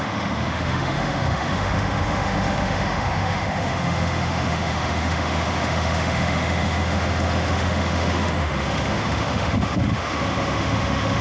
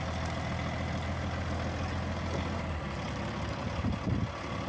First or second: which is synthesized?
first